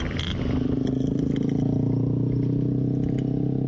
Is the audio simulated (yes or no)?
no